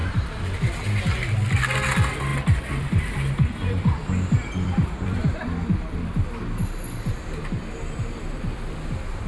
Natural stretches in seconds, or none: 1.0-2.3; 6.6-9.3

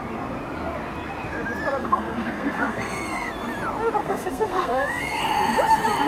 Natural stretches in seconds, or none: 0.0-1.8; 3.3-4.0; 5.2-6.1